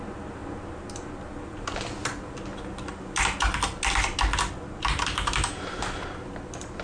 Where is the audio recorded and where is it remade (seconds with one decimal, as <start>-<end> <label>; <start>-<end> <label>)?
0.0-6.8 recorded